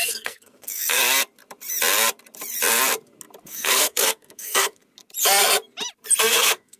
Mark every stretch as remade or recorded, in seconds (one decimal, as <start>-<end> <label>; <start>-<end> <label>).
0.0-1.0 remade; 1.0-3.4 recorded; 3.4-4.8 remade; 4.8-6.3 recorded; 6.3-6.8 remade